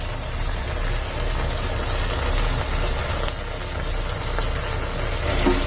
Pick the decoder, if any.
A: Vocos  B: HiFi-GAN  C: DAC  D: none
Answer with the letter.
D